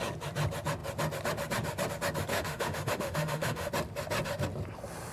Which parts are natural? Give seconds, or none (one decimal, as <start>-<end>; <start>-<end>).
0.0-2.3; 3.7-5.1

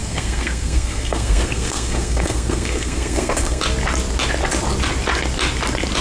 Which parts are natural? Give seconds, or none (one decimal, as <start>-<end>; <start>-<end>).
3.6-6.0

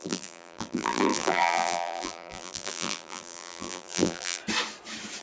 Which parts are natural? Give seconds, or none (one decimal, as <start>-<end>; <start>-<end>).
4.4-5.2

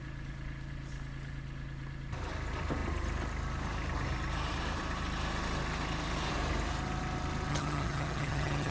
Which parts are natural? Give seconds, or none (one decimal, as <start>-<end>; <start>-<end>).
0.0-7.5

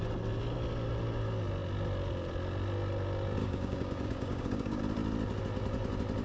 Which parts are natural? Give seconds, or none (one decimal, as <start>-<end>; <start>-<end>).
0.0-3.4; 4.8-6.2